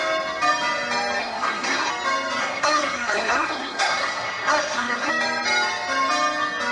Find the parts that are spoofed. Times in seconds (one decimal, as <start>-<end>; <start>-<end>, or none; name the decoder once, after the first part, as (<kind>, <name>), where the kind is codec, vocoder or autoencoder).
1.2-1.9 (codec, SNAC); 2.4-5.1